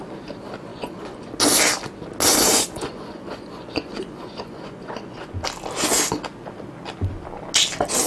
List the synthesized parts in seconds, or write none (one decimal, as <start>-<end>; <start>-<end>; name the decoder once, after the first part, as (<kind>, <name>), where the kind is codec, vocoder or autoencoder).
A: 0.7-1.3 (vocoder, Vocos); 2.3-5.4